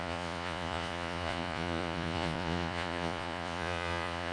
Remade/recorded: remade